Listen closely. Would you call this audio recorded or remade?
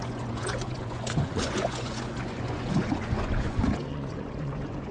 remade